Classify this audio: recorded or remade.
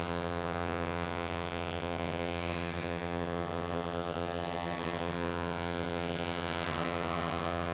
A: remade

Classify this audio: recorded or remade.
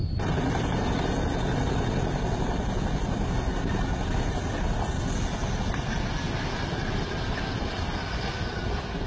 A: recorded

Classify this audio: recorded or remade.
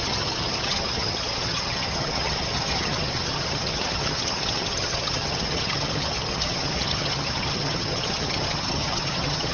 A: remade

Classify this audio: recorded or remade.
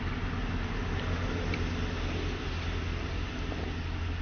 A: recorded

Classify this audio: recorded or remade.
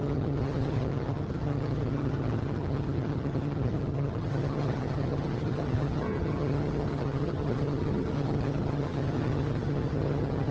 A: remade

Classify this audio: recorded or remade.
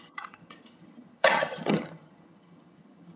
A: remade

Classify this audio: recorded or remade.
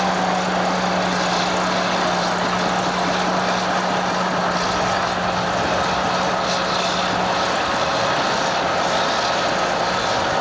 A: recorded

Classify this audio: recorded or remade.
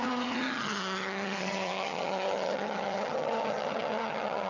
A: remade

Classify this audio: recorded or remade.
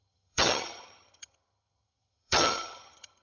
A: remade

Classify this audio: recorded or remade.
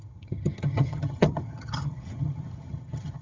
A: remade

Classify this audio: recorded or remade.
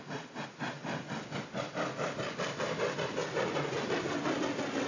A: recorded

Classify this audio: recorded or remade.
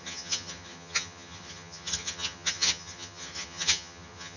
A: remade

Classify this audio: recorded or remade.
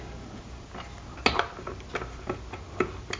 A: recorded